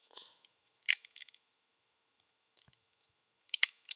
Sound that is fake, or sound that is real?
fake